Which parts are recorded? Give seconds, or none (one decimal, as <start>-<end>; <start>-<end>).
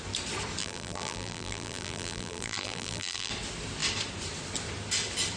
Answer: 0.0-0.6; 3.3-5.4